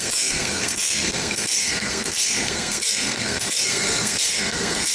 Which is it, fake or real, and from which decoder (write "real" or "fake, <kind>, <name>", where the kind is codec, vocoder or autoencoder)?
fake, codec, SNAC